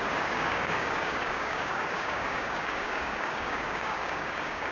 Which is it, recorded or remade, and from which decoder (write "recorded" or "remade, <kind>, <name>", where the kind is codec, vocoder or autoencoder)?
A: remade, codec, DAC